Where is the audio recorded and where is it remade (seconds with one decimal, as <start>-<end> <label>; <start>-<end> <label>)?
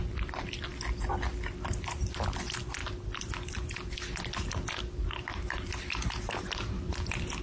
0.0-7.4 recorded